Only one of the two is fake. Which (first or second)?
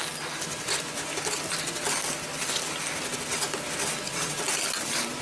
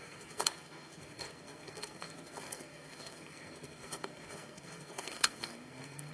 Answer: second